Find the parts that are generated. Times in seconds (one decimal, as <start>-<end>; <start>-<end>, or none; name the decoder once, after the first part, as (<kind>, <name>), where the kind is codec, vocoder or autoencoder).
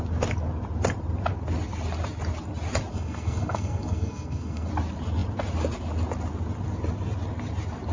2.9-4.7 (codec, SNAC)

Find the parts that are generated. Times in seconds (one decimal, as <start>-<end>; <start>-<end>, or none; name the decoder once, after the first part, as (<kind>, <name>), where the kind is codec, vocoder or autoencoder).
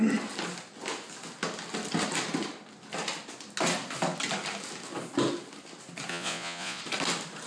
6.1-6.8 (vocoder, Vocos)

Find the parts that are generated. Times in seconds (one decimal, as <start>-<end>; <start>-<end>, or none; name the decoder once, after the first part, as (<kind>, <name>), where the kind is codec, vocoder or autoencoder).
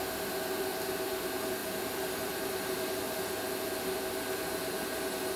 none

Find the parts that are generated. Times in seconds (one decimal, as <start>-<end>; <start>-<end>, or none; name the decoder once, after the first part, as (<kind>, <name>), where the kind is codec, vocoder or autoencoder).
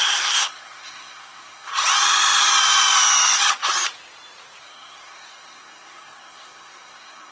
0.0-1.7 (codec, SNAC); 4.6-7.3